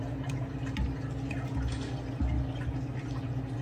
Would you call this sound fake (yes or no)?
no